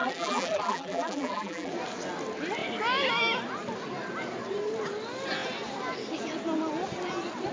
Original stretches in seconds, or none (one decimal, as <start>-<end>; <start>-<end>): 1.7-7.5